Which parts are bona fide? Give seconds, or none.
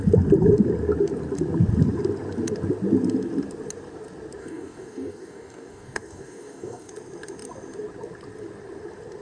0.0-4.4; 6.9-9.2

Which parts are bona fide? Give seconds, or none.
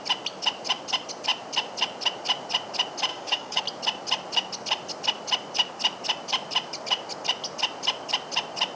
0.0-3.1; 3.6-8.8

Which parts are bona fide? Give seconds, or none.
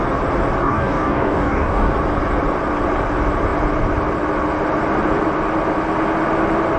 0.0-0.6; 1.9-6.8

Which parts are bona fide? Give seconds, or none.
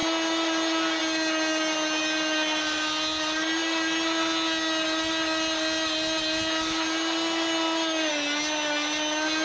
0.0-9.4